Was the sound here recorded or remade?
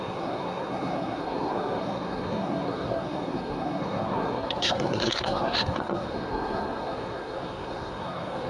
remade